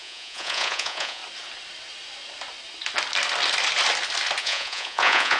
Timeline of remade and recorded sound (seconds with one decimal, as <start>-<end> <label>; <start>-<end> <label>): 0.0-1.2 remade; 1.2-4.4 recorded; 4.4-5.4 remade